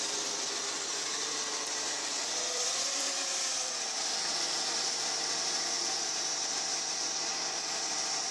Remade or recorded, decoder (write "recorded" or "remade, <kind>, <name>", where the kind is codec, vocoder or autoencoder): remade, vocoder, BigVGAN v2